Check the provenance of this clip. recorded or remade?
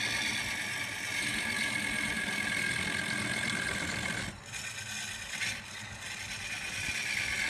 recorded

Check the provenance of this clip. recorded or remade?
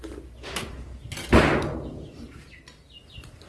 recorded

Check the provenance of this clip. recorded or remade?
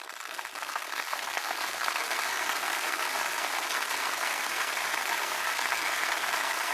remade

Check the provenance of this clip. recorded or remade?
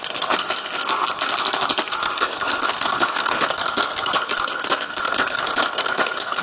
remade